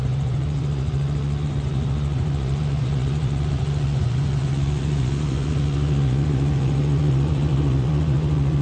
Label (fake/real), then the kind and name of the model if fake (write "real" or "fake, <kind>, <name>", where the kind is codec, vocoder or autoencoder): fake, vocoder, Vocos